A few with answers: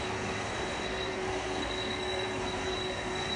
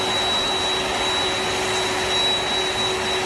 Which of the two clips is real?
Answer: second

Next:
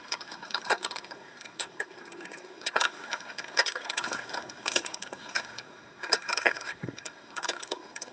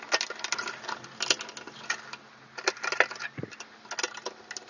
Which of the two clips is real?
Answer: second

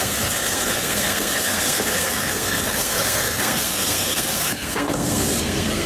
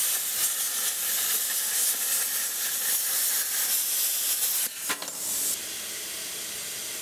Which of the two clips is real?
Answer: second